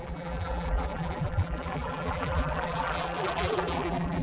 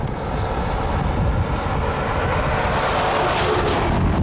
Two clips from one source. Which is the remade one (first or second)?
first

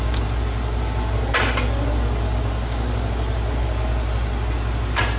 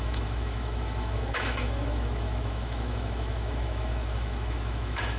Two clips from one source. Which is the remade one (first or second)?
second